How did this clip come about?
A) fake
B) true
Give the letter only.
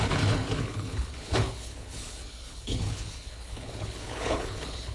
A